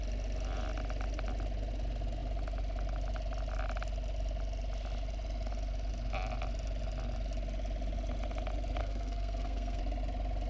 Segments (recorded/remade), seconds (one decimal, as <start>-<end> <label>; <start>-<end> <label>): 0.0-8.8 recorded; 8.8-9.8 remade; 9.8-10.5 recorded